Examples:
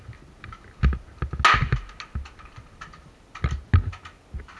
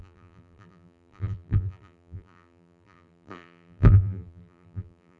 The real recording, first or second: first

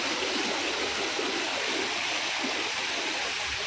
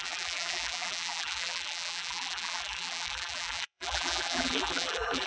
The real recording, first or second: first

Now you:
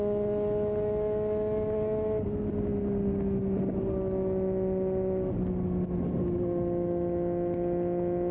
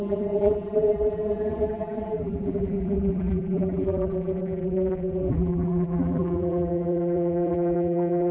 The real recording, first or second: first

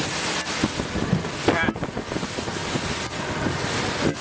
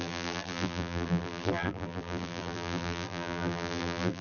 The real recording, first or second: first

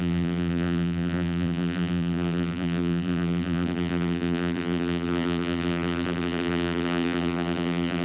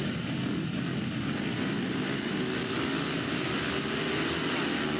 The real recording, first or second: second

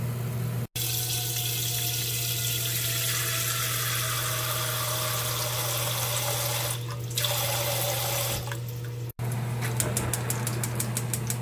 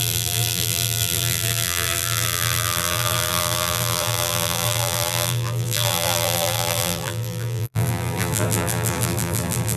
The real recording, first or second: first